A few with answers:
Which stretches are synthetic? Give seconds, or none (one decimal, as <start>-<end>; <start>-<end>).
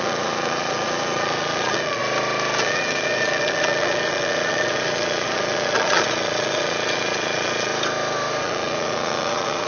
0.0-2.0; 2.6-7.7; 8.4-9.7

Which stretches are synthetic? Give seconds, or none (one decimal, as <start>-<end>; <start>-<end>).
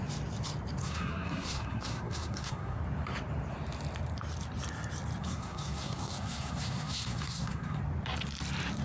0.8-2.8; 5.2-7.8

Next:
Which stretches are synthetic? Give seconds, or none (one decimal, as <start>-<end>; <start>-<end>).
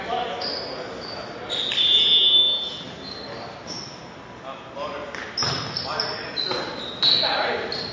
none